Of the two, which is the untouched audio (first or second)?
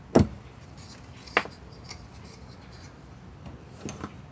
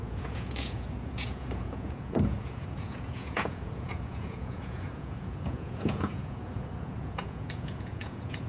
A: first